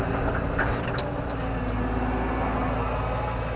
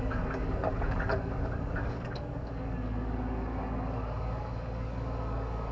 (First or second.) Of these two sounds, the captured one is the first